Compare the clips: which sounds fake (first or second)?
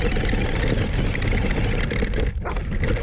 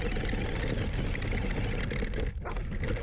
first